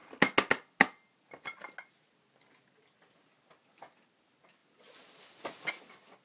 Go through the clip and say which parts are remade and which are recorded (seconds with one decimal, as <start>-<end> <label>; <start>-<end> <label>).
0.0-6.2 recorded

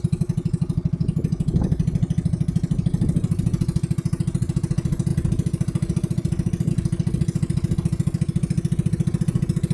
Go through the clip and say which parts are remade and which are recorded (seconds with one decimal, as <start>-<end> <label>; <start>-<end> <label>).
0.0-9.7 recorded

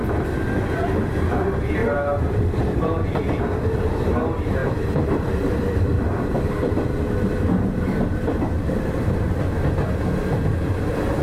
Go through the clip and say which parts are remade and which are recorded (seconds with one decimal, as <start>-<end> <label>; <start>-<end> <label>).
0.0-1.8 recorded; 1.8-3.2 remade; 3.2-4.6 recorded; 4.6-9.4 remade; 9.4-11.2 recorded